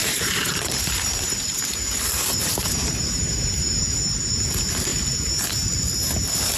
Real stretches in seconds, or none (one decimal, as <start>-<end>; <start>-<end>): 4.0-6.6